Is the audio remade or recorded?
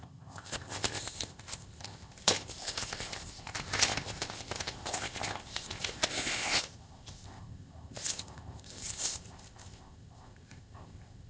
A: remade